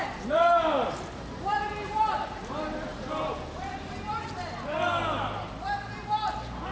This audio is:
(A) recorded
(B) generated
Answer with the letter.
A